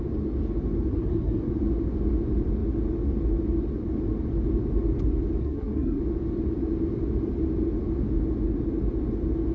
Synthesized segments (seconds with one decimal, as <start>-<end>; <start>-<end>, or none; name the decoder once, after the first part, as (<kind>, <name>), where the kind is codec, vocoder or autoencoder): 0.9-1.5 (codec, SNAC); 5.4-6.0